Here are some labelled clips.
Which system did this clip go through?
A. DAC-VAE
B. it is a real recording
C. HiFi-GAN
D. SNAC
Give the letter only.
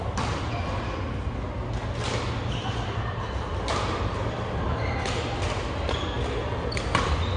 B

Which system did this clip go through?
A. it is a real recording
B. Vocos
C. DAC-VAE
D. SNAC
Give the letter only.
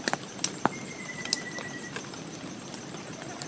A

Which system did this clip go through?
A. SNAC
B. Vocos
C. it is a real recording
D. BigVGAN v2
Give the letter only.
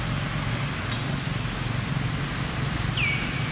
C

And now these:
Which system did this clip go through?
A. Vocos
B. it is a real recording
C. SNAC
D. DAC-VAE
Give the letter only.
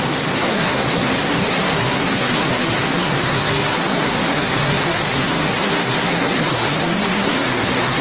C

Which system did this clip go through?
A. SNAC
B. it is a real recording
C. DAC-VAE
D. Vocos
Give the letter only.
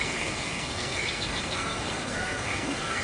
A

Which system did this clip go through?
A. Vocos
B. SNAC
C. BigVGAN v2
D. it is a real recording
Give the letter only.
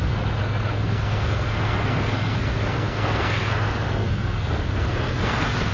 B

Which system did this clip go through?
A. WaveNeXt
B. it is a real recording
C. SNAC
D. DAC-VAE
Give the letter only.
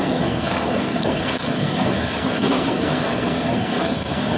C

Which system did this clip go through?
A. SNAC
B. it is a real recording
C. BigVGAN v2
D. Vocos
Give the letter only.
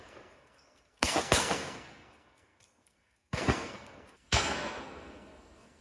A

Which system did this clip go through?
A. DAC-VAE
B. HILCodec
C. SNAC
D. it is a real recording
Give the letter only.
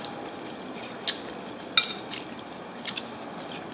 D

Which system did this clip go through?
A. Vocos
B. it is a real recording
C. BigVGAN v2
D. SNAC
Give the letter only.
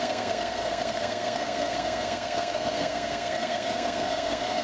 D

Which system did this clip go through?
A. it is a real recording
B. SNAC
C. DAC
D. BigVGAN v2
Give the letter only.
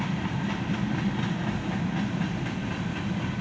A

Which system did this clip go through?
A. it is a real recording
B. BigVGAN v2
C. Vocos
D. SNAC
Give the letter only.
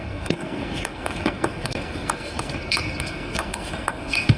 D